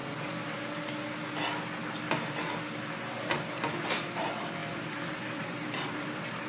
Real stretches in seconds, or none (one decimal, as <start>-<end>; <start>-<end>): 0.0-3.9